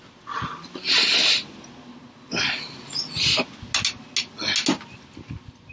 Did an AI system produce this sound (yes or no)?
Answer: no